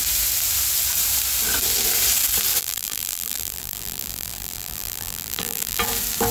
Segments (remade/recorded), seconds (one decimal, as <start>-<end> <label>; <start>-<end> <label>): 0.0-2.6 recorded; 2.6-5.8 remade; 5.8-6.3 recorded